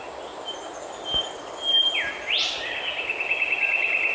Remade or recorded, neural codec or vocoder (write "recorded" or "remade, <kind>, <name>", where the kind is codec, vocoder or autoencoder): recorded